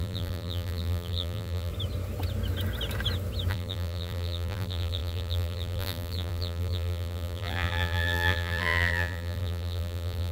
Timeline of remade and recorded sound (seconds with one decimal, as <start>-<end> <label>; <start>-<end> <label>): 0.0-1.7 remade; 1.7-3.5 recorded; 3.5-10.3 remade